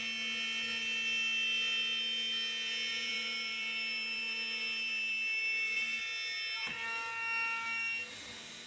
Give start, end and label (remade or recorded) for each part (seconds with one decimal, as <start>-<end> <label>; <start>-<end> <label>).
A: 0.0-2.9 recorded; 2.9-6.0 remade; 6.0-8.7 recorded